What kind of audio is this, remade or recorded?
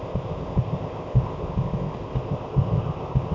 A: remade